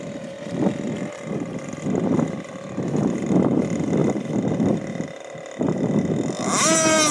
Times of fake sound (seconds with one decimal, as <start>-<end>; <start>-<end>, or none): none